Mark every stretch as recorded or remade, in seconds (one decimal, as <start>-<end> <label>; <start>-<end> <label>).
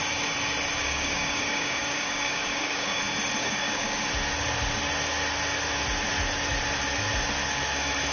0.0-0.8 recorded; 0.8-3.0 remade; 3.0-3.4 recorded; 3.4-4.0 remade; 4.0-8.1 recorded